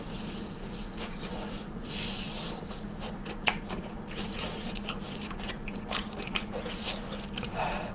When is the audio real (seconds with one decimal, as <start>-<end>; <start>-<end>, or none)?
6.9-7.4